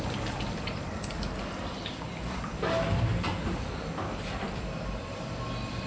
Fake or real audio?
fake